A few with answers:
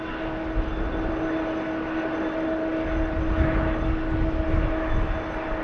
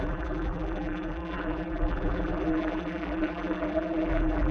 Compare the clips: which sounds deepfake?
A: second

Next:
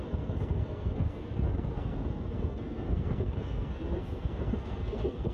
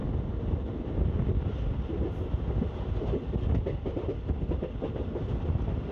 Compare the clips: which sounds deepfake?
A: first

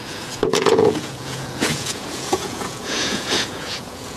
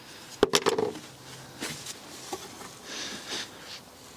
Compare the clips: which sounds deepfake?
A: first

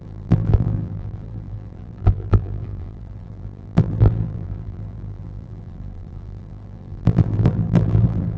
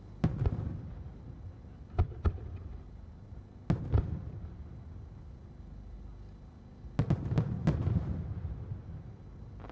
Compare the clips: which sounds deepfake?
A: first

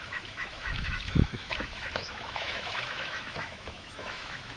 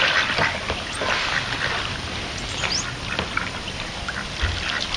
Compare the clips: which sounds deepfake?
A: first